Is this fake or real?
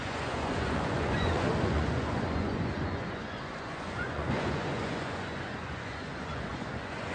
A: fake